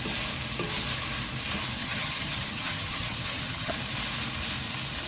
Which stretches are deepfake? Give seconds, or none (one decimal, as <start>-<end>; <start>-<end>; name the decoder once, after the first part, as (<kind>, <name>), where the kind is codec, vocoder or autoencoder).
1.8-3.7 (vocoder, HiFi-GAN)